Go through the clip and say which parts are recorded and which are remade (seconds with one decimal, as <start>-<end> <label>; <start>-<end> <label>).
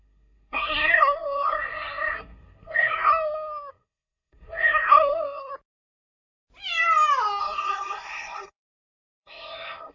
0.0-3.1 remade; 3.1-3.7 recorded; 3.7-5.5 remade; 5.5-7.4 recorded; 7.4-9.9 remade